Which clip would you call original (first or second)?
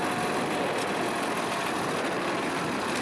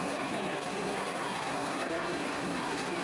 first